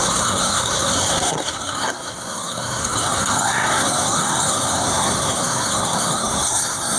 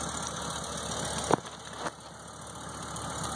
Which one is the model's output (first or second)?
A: first